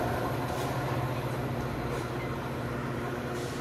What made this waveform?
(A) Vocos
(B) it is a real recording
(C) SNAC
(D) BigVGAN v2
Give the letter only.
B